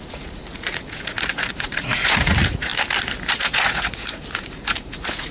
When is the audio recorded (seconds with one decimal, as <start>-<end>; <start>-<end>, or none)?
2.7-3.3